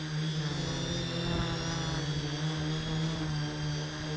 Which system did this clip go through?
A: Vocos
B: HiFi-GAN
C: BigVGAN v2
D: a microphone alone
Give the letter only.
D